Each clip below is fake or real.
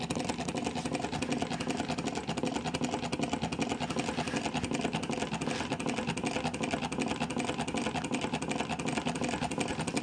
real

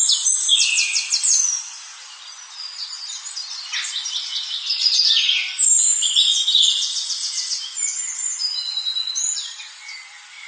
real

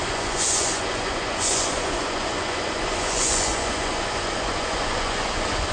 fake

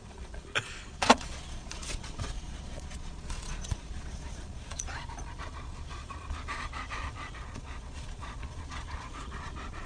fake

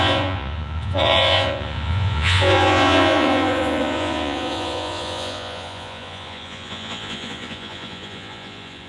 fake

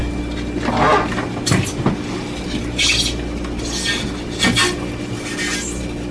real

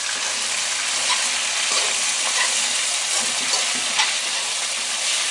real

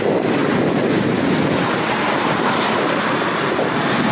real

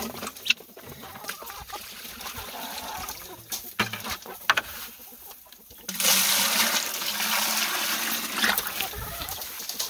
real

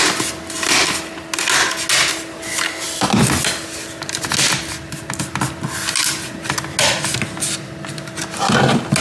real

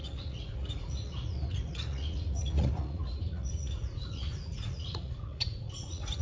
fake